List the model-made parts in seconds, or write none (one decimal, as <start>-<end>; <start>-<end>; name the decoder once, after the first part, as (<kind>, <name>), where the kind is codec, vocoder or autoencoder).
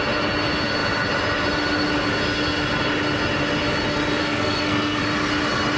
4.2-5.0 (codec, SNAC)